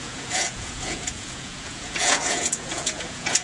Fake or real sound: fake